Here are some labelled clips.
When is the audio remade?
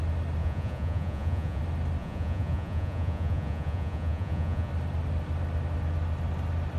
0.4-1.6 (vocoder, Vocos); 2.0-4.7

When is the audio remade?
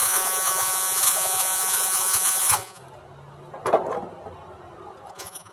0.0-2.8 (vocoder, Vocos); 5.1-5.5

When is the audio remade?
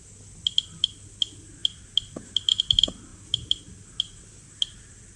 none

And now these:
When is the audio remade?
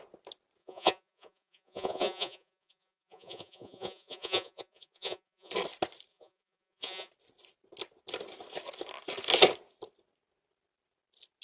0.6-5.5 (vocoder, Vocos); 6.1-7.1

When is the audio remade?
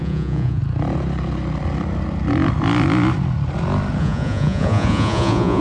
0.0-0.6 (vocoder, Vocos); 4.0-5.6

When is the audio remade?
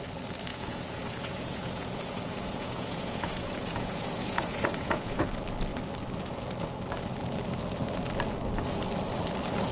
0.5-5.2 (vocoder, Vocos)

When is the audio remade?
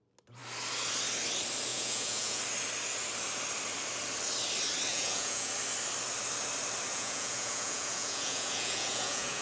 1.7-2.4 (vocoder, Vocos); 4.9-5.5; 6.9-9.4